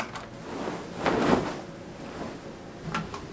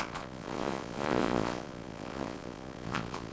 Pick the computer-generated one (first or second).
second